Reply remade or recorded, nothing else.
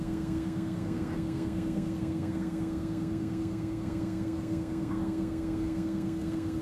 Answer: remade